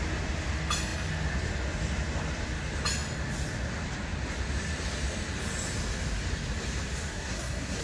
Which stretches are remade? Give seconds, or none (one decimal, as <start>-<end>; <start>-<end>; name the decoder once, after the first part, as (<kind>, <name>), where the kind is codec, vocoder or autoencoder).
7.1-7.8 (codec, SNAC)